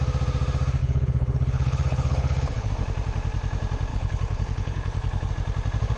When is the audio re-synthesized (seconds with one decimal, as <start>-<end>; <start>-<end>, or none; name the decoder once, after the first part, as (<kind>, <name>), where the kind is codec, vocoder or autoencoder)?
0.8-2.7 (codec, HILCodec); 3.9-5.3